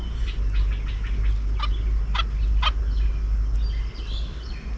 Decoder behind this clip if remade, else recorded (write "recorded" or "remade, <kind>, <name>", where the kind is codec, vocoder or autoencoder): recorded